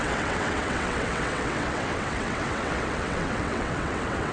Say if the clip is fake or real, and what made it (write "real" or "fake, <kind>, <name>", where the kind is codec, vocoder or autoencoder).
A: fake, vocoder, WaveNeXt